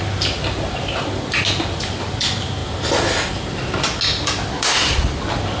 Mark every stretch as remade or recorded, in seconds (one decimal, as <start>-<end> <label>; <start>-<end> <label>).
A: 0.0-4.5 recorded; 4.5-5.0 remade; 5.0-5.6 recorded

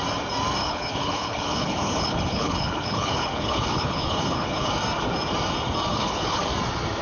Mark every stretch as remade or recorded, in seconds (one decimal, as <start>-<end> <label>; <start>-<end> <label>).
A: 0.0-0.6 recorded; 0.6-4.7 remade; 4.7-5.9 recorded; 5.9-6.4 remade; 6.4-7.0 recorded

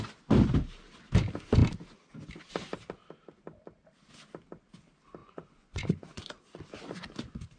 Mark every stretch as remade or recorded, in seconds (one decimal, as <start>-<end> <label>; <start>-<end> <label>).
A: 0.0-5.2 recorded; 5.2-6.2 remade; 6.2-7.6 recorded

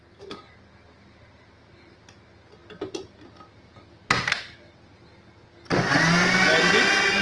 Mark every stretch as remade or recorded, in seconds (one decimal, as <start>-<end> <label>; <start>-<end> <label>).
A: 0.0-7.2 recorded

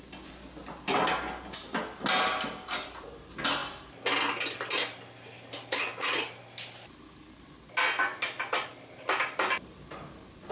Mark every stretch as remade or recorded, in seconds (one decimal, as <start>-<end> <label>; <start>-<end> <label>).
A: 0.0-10.5 recorded